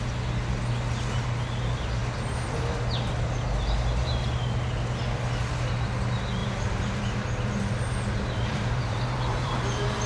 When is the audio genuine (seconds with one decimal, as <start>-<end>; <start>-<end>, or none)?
0.0-6.4

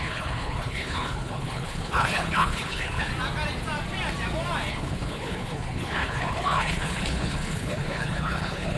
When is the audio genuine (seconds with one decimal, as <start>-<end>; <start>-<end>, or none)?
3.1-4.7

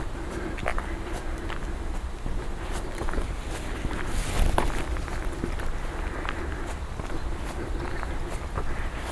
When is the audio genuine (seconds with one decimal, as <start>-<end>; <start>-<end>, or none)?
0.0-9.1

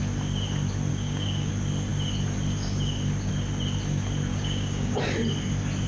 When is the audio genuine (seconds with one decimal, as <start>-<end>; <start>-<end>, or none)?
0.0-0.9; 1.5-4.3; 5.0-5.9

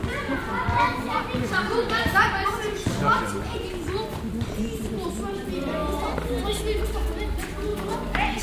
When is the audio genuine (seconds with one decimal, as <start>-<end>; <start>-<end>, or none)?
0.0-8.4

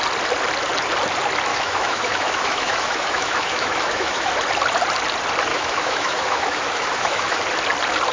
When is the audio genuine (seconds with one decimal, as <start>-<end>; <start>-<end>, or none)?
0.0-1.5; 4.3-5.5; 7.4-8.1